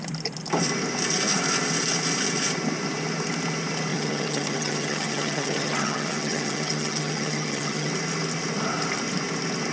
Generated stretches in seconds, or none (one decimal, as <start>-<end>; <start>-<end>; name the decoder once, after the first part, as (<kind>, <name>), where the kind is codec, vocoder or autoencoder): 3.9-7.9 (vocoder, HiFi-GAN)